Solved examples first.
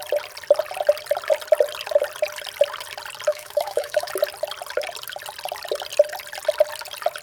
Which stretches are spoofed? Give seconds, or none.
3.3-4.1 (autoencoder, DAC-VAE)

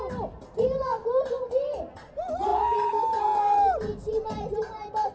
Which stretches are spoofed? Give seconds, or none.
none

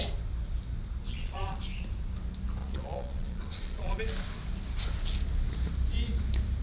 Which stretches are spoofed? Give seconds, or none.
1.1-1.6 (vocoder, Vocos); 2.6-4.0

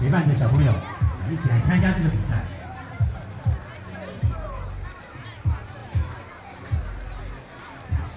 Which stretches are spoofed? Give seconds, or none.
none